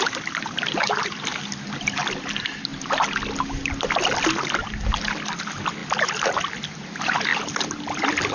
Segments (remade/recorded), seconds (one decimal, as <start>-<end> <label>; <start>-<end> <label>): 0.0-8.3 recorded